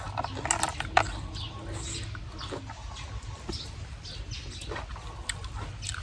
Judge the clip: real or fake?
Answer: real